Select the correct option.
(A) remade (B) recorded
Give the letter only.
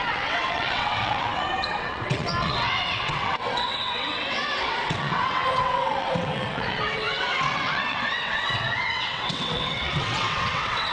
A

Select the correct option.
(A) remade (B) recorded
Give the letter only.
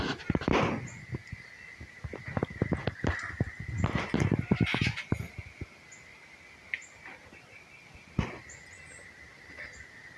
B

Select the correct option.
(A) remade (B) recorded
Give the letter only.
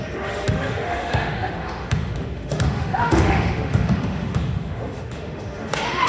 A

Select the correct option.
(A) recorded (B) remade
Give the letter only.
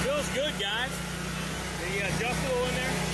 A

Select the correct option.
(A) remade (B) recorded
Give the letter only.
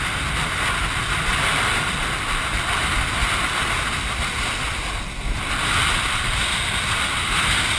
B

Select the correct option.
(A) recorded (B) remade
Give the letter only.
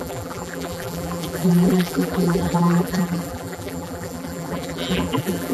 B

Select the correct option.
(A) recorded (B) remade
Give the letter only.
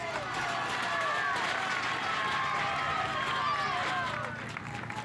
A